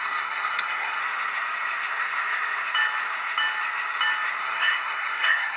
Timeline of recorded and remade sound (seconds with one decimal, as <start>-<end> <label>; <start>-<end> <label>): 0.0-1.0 remade; 1.0-4.4 recorded; 4.4-5.6 remade